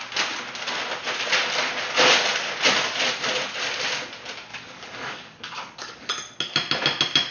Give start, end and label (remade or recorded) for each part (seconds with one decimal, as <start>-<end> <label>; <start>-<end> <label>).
0.0-4.5 recorded; 4.5-6.1 remade; 6.1-7.3 recorded

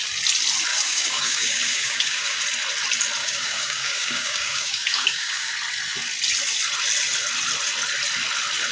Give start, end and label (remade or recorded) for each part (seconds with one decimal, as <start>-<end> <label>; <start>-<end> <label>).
0.0-0.7 recorded; 0.7-2.4 remade; 2.4-3.2 recorded; 3.2-5.5 remade; 5.5-8.7 recorded